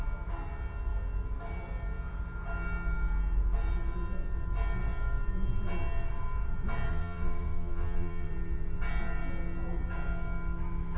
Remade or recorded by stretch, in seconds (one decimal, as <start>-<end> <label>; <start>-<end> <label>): 0.0-6.9 recorded; 6.9-8.3 remade; 8.3-11.0 recorded

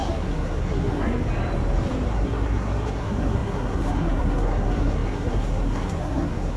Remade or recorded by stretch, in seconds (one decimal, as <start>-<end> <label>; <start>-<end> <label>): 0.0-1.2 remade; 1.2-2.1 recorded; 2.1-6.6 remade

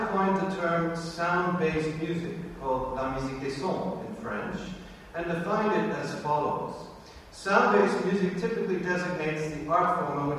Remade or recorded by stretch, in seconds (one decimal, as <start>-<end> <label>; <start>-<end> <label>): 0.0-10.4 recorded

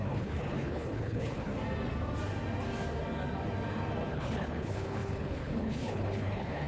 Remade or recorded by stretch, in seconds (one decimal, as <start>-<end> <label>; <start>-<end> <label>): 0.0-1.5 remade; 1.5-4.1 recorded; 4.1-6.7 remade

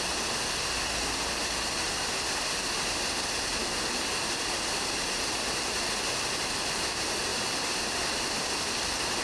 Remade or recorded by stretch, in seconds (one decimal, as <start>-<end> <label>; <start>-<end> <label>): 0.0-7.3 recorded; 7.3-8.0 remade; 8.0-9.2 recorded

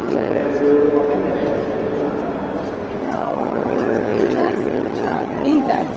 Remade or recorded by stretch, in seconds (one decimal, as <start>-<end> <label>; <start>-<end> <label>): 0.0-0.4 remade; 0.4-3.0 recorded; 3.0-6.0 remade